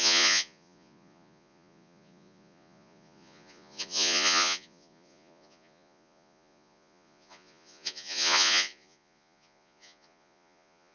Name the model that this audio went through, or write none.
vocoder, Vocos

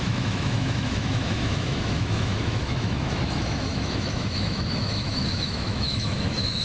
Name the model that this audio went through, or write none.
autoencoder, DAC-VAE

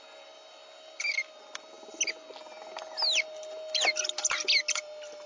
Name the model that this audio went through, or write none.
none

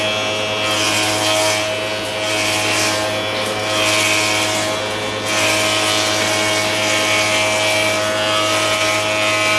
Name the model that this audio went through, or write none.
none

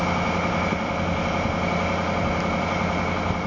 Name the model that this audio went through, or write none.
none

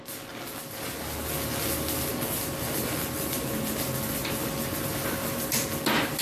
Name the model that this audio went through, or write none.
none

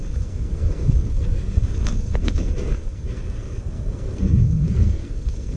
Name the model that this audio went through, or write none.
codec, SNAC